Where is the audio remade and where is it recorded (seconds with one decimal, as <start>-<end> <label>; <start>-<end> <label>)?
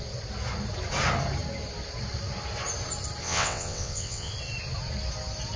0.0-3.2 recorded; 3.2-4.3 remade; 4.3-5.6 recorded